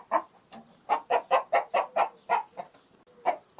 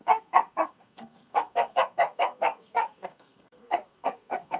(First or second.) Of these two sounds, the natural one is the first